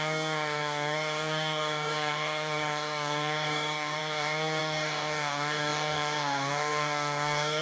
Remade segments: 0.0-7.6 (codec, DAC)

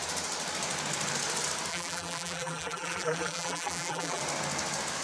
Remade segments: 1.7-4.2 (vocoder, BigVGAN v2)

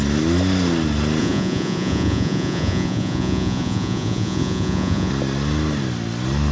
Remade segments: 1.2-5.1 (vocoder, Vocos)